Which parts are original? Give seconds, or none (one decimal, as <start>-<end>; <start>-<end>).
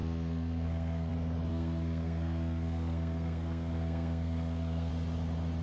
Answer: 1.1-1.5; 4.9-5.6